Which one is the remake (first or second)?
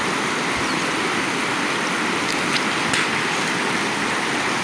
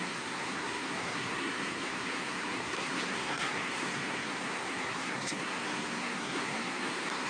second